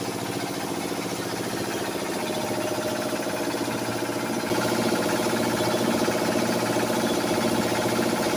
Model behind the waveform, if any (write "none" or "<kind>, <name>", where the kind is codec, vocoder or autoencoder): none